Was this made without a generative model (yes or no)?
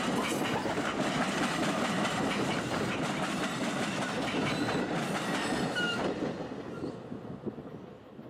yes